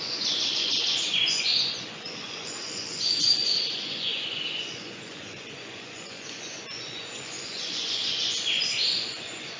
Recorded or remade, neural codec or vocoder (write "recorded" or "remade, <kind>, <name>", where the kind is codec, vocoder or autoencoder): remade, vocoder, Vocos